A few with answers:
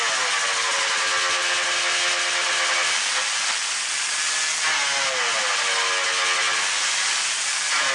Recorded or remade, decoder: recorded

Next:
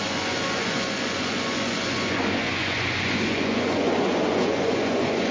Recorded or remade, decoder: remade, vocoder, Vocos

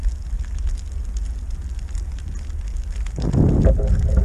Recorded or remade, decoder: recorded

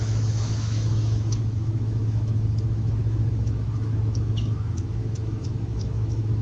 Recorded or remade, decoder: remade, autoencoder, DAC-VAE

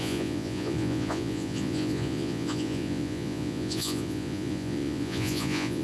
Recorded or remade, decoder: remade, vocoder, Vocos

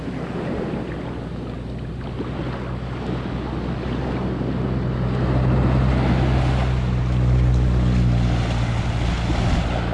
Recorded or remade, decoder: recorded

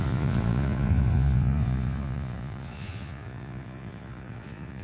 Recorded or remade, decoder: remade, vocoder, Vocos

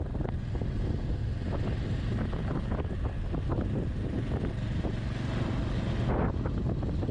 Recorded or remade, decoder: recorded